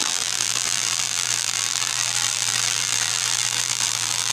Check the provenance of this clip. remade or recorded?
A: remade